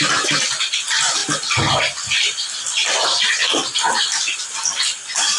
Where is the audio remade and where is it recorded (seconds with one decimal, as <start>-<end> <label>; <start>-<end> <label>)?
0.0-5.4 recorded